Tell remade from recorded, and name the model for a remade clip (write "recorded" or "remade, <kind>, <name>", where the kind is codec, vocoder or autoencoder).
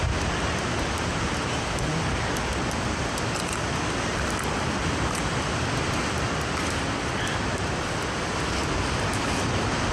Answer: recorded